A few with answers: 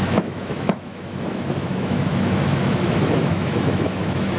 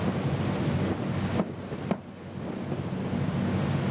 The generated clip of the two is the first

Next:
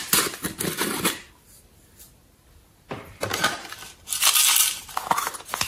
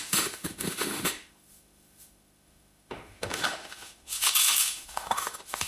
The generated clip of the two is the second